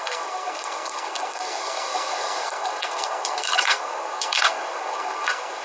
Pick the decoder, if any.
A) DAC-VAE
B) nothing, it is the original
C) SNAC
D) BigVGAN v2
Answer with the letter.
C